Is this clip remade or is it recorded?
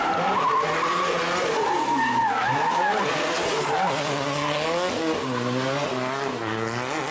recorded